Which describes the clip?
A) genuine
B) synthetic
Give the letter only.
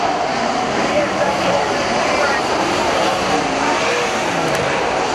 B